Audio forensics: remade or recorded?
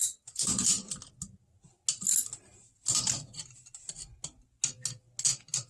recorded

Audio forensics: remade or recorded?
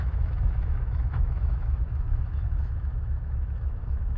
remade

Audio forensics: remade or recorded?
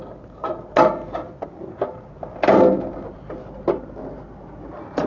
recorded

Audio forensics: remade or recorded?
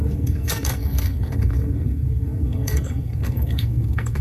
remade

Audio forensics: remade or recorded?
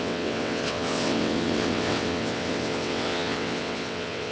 remade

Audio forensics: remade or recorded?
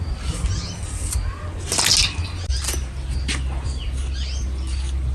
recorded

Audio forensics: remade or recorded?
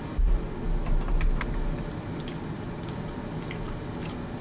recorded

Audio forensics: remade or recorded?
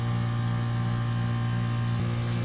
recorded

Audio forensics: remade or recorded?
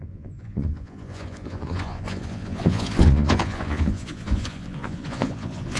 remade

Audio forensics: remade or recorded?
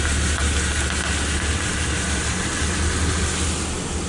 recorded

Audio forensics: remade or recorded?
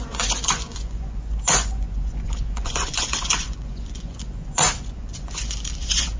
remade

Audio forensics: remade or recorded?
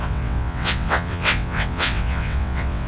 remade